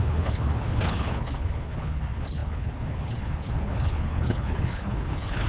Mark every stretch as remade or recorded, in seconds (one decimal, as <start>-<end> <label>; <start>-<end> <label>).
0.0-5.5 remade